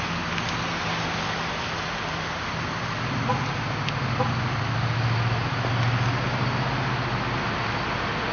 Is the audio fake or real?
real